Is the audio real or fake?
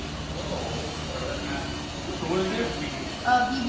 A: real